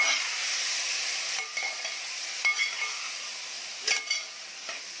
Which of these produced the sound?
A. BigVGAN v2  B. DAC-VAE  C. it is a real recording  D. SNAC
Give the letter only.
C